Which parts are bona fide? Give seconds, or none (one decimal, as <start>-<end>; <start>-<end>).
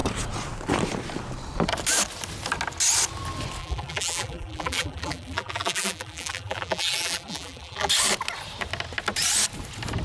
0.0-3.6; 7.9-10.0